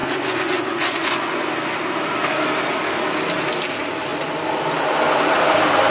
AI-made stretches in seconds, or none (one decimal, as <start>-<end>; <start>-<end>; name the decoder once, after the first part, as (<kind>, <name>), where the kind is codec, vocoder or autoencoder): 0.0-1.4 (vocoder, Vocos)